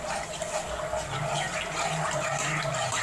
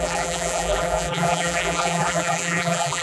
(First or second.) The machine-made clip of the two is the second